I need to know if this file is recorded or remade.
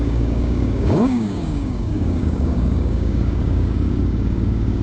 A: remade